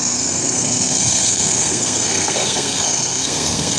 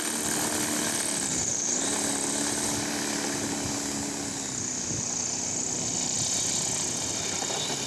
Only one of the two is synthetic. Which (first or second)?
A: first